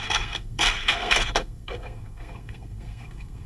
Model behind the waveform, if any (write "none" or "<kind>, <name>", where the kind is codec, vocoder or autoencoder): codec, SNAC